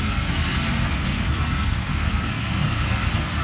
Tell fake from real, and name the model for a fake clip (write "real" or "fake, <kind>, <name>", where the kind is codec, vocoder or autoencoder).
fake, codec, SNAC